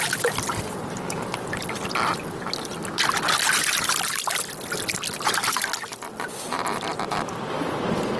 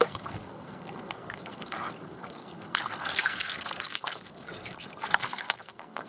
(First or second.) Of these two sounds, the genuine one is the first